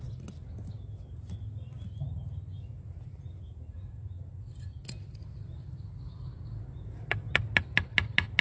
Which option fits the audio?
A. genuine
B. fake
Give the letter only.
A